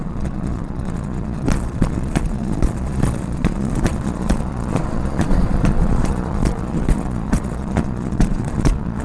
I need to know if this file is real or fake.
fake